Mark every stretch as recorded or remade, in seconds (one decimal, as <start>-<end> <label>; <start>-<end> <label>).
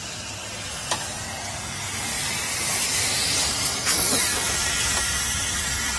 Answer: 0.0-2.1 recorded; 2.1-6.0 remade